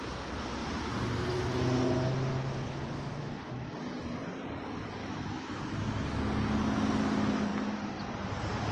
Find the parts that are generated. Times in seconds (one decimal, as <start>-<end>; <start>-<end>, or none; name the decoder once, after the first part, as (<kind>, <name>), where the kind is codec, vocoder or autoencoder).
2.3-3.5 (autoencoder, DAC-VAE); 5.0-5.6